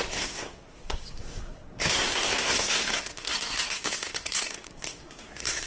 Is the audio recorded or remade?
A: remade